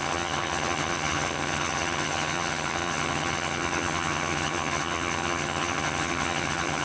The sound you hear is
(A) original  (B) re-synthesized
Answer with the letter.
B